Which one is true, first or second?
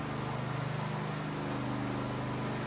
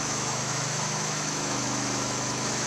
first